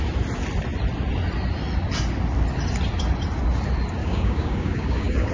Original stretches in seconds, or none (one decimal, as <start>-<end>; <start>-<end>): 0.0-4.0